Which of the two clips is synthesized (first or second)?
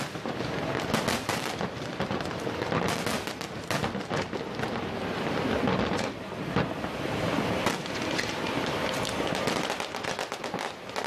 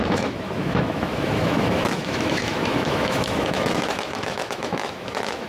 second